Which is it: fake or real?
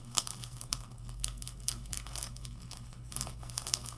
fake